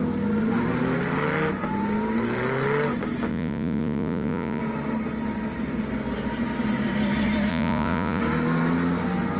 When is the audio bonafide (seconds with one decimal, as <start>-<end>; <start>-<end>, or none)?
0.0-3.3; 4.6-7.5; 8.2-9.4